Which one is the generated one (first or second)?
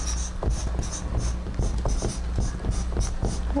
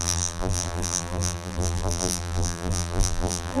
second